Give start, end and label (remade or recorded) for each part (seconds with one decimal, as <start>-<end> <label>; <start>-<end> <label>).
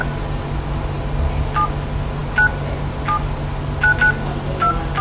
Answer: 0.0-5.0 recorded